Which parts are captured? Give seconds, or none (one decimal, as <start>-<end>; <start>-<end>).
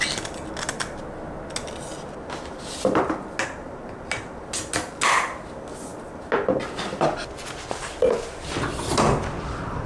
0.0-9.9